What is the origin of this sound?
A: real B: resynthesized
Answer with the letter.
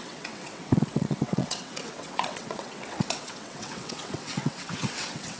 B